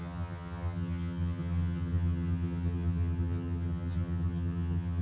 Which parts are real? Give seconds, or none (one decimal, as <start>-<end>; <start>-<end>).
none

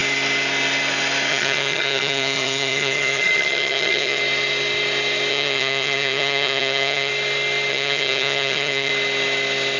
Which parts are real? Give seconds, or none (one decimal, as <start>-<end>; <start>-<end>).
0.0-1.3; 4.2-5.3; 7.1-7.7; 8.9-9.8

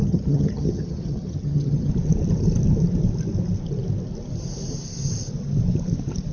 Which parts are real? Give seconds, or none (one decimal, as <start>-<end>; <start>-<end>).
1.9-6.3

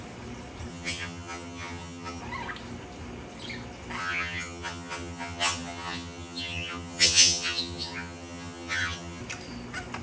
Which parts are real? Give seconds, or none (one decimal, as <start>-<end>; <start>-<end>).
0.0-0.7; 2.2-4.0; 9.2-10.0

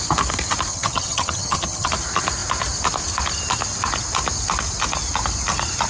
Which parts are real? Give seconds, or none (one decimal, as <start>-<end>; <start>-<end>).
0.0-0.7; 1.9-5.9

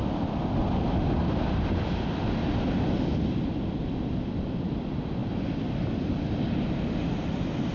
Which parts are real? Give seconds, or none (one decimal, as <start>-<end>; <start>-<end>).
0.0-7.7

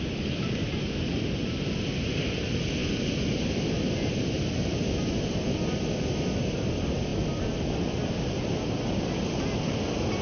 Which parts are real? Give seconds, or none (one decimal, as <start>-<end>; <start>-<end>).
0.0-10.2

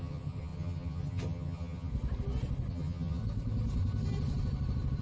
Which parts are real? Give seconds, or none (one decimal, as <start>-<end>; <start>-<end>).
1.9-2.7; 3.2-5.0